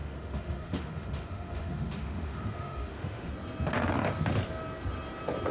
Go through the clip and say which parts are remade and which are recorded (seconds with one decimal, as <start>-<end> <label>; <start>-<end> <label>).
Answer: 0.0-3.3 remade; 3.3-5.5 recorded